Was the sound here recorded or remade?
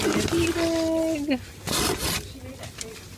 recorded